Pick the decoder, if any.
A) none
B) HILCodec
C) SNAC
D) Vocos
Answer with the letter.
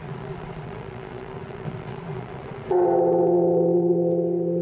D